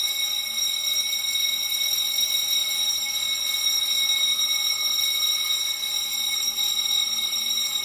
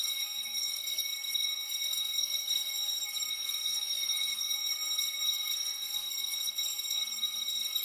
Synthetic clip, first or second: second